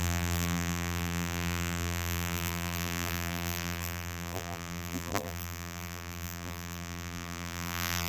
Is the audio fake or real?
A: fake